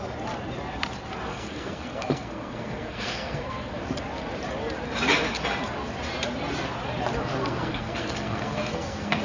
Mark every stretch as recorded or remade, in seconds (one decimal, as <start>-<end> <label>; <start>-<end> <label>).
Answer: 0.0-1.3 recorded; 1.3-3.7 remade; 3.7-7.4 recorded; 7.4-9.2 remade